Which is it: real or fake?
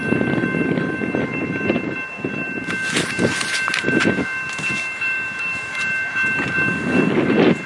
real